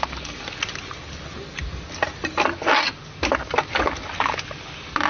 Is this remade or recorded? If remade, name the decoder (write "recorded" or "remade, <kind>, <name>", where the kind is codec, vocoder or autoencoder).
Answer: recorded